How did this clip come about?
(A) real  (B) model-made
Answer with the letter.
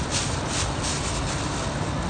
B